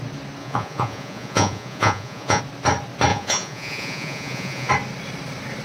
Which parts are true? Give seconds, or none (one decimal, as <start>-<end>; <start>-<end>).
0.0-0.4; 2.4-3.1; 4.7-5.6